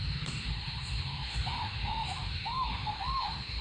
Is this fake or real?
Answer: fake